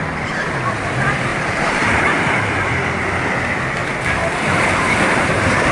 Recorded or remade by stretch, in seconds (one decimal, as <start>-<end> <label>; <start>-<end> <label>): 0.0-1.3 recorded; 1.3-3.3 remade; 3.3-5.7 recorded